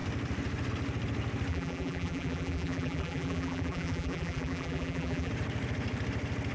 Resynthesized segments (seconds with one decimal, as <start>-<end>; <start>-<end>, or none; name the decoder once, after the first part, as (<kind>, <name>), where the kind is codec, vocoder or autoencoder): 1.5-5.3 (vocoder, BigVGAN v2)